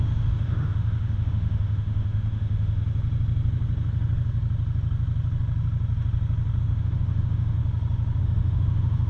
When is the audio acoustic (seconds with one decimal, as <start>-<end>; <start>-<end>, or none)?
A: 2.8-6.6; 7.6-8.2